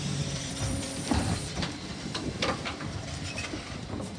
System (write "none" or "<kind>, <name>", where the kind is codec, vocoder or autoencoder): vocoder, BigVGAN v2